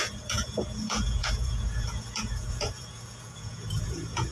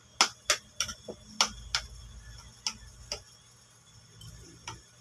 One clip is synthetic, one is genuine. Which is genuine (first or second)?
second